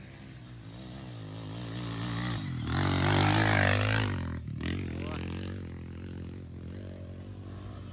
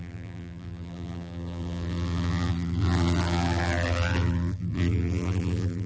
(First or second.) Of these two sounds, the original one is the first